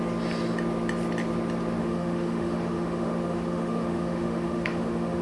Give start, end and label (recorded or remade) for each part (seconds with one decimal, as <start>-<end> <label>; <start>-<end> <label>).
0.0-1.8 recorded; 1.8-5.2 remade